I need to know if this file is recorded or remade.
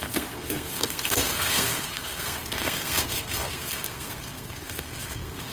remade